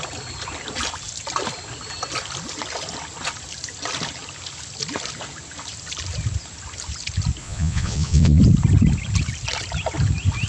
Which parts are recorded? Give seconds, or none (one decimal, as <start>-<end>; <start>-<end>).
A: 0.0-7.4; 8.4-10.5